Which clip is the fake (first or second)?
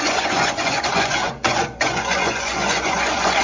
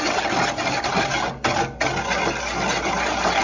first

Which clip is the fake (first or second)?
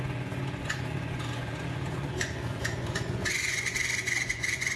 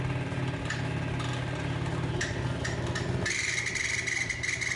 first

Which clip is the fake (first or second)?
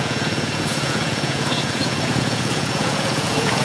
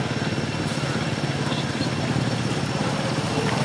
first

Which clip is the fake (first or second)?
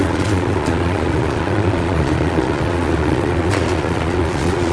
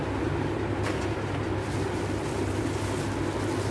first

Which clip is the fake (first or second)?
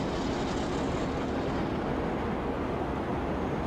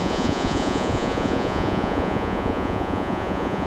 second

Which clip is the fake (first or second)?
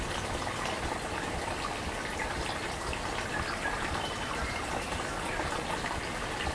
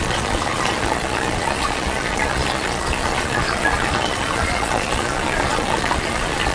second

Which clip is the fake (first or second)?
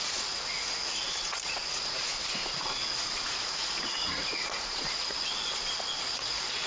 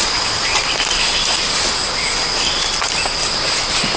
first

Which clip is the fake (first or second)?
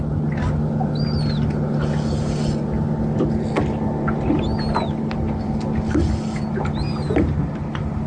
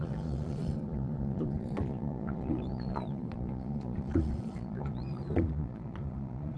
second